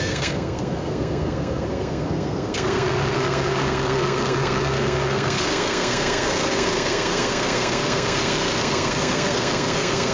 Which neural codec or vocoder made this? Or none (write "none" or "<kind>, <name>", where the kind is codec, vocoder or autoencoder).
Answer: codec, SNAC